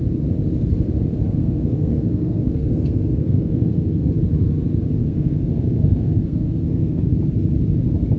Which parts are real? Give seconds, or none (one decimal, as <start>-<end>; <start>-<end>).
0.0-1.4; 4.1-5.0; 7.1-8.2